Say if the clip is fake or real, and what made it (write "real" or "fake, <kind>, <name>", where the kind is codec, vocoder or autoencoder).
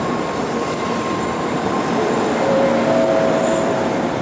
fake, vocoder, BigVGAN v2